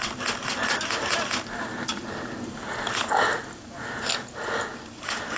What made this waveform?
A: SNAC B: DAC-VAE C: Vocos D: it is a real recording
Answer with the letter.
D